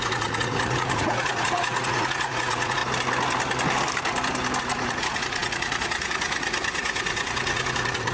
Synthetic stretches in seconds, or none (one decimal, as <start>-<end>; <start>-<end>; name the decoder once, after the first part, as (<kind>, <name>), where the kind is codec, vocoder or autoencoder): 0.0-2.8 (vocoder, Vocos); 4.6-8.1

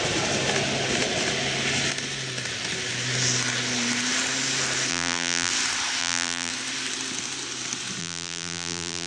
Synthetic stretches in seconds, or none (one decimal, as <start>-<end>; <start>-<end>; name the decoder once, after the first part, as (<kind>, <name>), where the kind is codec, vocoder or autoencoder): 4.9-5.5 (vocoder, BigVGAN v2); 6.0-6.5; 8.0-9.1

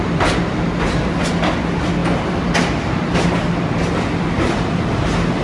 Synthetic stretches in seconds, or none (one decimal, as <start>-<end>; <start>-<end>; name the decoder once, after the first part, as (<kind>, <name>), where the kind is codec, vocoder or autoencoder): none

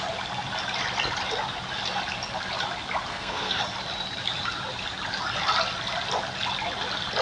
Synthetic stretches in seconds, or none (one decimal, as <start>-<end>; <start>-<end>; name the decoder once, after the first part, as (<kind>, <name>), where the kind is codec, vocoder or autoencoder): 3.1-3.6 (codec, SNAC)

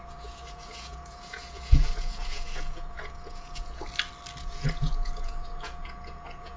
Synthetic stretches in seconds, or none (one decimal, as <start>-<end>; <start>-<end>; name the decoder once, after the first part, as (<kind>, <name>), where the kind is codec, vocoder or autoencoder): 0.0-3.9 (vocoder, Vocos); 4.4-6.6